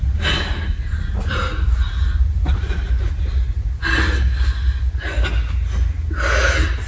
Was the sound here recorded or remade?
recorded